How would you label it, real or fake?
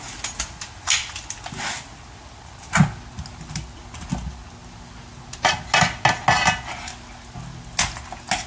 real